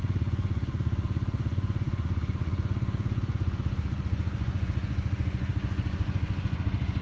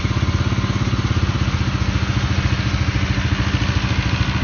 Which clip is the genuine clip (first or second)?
second